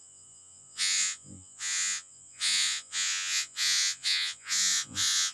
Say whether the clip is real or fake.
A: fake